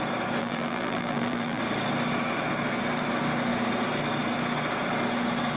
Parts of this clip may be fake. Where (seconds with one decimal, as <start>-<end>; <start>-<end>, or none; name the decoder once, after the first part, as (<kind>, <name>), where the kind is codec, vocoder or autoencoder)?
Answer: 0.4-1.6 (vocoder, BigVGAN v2)